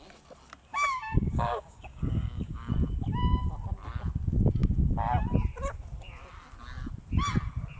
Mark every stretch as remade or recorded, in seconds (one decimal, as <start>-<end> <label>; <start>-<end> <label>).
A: 0.0-0.7 recorded; 0.7-2.7 remade; 2.7-7.8 recorded